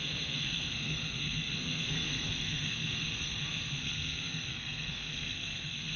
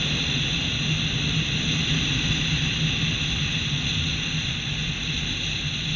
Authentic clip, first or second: second